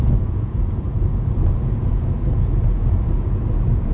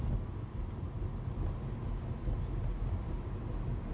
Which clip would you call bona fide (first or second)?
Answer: second